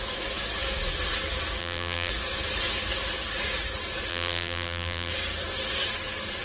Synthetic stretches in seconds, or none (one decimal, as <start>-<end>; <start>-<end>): 1.6-2.1; 4.1-5.1